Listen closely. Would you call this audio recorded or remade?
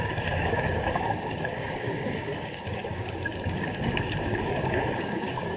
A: remade